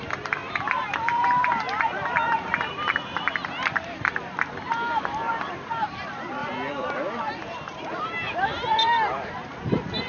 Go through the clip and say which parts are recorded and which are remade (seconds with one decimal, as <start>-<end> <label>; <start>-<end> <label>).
0.0-6.4 remade; 6.4-7.2 recorded; 7.2-10.1 remade